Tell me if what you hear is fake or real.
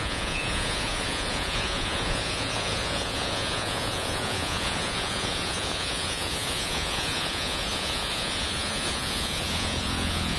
fake